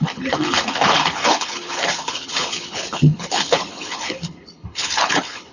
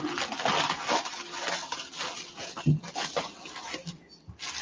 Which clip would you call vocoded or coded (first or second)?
first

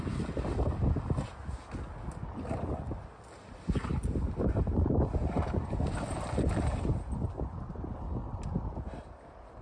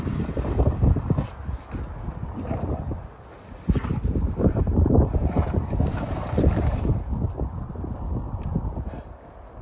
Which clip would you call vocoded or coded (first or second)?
second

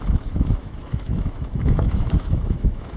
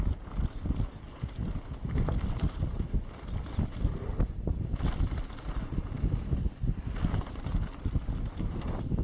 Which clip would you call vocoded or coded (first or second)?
first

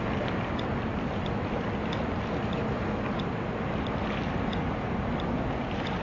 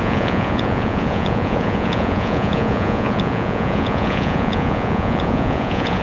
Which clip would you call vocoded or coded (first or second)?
second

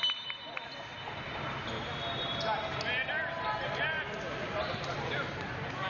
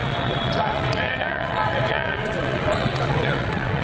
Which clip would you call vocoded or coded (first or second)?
second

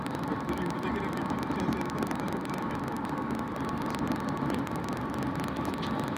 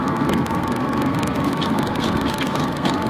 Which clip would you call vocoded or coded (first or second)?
second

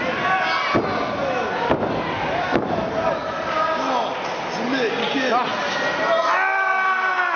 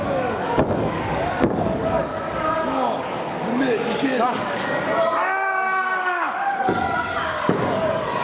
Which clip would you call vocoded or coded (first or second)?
second